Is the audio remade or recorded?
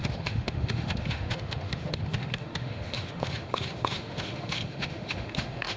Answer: remade